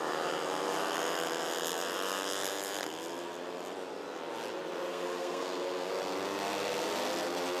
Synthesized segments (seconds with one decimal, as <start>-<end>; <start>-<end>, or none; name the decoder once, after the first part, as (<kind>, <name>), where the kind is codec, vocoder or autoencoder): 4.9-5.9 (codec, SNAC)